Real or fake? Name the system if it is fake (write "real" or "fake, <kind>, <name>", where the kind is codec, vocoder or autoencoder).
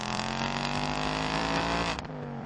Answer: fake, vocoder, BigVGAN v2